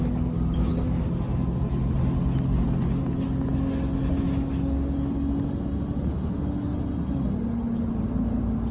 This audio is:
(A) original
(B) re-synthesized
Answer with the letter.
A